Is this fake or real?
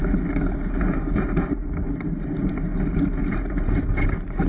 real